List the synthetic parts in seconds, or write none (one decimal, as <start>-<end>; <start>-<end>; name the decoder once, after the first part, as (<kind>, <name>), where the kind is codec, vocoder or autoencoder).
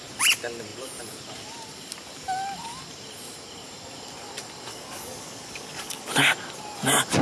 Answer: 4.7-6.1 (codec, DAC)